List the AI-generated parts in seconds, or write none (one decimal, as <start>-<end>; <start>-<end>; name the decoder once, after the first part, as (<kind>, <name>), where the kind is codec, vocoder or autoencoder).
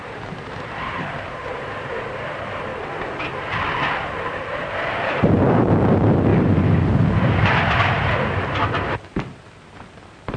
0.0-2.7 (vocoder, BigVGAN v2); 5.0-10.4